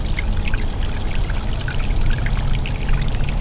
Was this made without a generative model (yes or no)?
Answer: yes